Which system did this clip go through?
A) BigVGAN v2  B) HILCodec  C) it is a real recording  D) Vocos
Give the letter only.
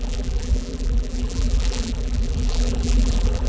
A